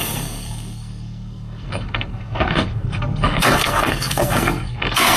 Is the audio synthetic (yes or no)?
yes